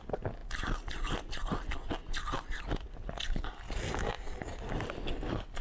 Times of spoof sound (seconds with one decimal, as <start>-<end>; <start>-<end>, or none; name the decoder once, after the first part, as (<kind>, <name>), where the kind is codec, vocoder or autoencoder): none

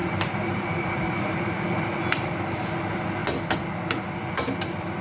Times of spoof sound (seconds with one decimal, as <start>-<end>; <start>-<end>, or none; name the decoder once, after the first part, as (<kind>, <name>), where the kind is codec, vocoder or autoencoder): 0.0-2.6 (vocoder, BigVGAN v2)

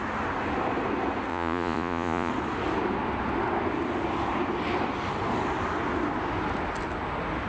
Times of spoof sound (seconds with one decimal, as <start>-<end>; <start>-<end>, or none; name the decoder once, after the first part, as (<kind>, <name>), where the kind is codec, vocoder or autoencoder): 1.3-2.3 (vocoder, Vocos)

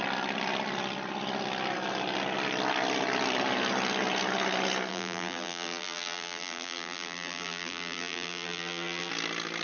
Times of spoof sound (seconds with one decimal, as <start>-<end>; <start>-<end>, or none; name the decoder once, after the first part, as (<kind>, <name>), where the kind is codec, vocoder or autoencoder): 4.9-9.1 (vocoder, BigVGAN v2)

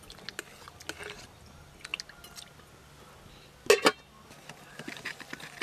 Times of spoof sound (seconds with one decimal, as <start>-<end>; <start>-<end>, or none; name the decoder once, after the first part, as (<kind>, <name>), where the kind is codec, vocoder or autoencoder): none